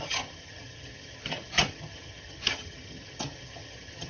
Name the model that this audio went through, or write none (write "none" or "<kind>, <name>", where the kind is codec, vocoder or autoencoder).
vocoder, HiFi-GAN